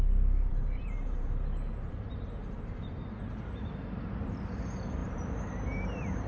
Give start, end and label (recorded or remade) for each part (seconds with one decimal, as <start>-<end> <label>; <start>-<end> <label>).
0.0-0.5 recorded; 0.5-4.2 remade; 4.2-5.0 recorded; 5.0-6.3 remade